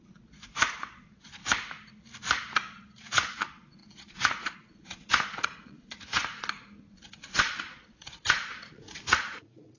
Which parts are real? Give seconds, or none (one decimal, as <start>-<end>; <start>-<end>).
1.4-3.1; 6.2-6.9